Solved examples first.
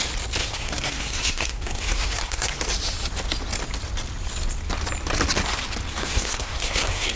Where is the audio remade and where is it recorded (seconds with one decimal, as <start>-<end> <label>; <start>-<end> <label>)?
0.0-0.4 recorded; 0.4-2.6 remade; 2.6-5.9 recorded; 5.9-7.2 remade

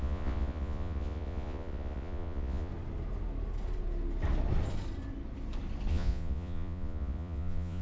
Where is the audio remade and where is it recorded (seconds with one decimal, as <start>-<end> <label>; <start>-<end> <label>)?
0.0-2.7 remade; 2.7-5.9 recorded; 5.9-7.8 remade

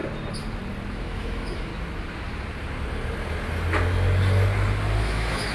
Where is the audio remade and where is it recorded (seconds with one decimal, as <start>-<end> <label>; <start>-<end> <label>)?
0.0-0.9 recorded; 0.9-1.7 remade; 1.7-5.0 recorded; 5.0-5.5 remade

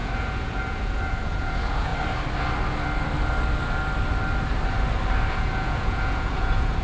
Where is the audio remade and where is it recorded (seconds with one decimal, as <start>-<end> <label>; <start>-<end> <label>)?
0.0-1.9 remade; 1.9-5.4 recorded; 5.4-6.8 remade

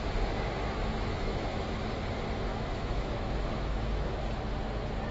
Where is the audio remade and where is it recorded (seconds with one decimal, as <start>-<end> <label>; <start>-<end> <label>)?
0.0-0.8 recorded; 0.8-1.6 remade; 1.6-2.5 recorded; 2.5-4.2 remade; 4.2-5.1 recorded

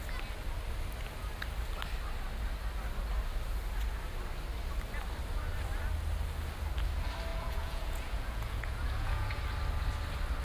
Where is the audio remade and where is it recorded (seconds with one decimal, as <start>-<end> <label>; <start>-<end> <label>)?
0.0-7.3 recorded; 7.3-9.4 remade; 9.4-10.4 recorded